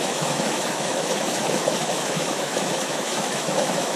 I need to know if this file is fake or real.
fake